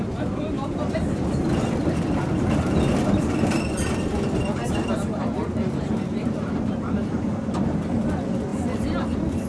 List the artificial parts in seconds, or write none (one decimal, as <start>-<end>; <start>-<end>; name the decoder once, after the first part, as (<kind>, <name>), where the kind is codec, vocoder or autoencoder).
none